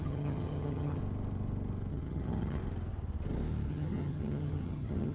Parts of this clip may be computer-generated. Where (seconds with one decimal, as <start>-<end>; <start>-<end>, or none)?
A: 0.0-1.0; 1.9-2.6; 3.7-5.1